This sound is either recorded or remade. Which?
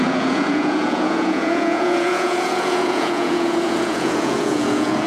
remade